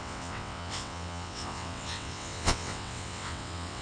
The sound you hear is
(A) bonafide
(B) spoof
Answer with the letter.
B